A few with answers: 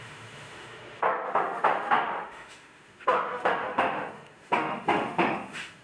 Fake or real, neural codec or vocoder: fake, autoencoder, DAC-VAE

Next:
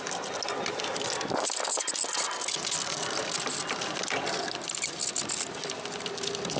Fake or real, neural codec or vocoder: real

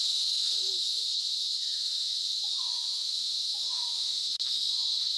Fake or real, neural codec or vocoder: fake, autoencoder, DAC-VAE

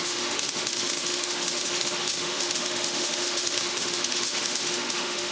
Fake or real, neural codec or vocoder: fake, autoencoder, DAC-VAE